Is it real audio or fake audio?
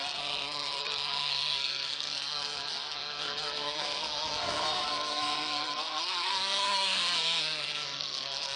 fake